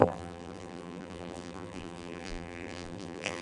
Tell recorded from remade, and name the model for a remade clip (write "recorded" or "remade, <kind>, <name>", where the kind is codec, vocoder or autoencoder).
remade, vocoder, BigVGAN v2